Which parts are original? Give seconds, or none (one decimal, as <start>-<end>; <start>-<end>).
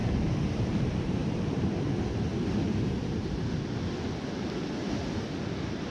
0.0-1.2; 1.8-5.9